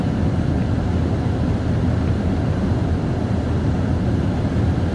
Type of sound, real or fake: real